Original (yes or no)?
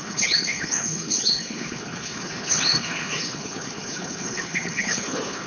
no